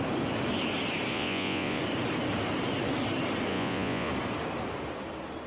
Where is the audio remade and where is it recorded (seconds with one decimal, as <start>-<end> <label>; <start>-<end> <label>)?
0.0-1.1 recorded; 1.1-1.8 remade; 1.8-3.5 recorded; 3.5-4.1 remade; 4.1-5.5 recorded